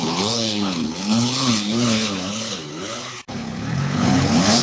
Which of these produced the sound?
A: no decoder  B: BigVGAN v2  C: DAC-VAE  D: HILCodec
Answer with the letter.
D